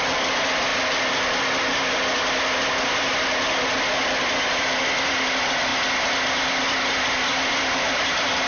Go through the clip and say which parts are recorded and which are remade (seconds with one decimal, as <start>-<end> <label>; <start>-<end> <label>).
0.0-8.5 recorded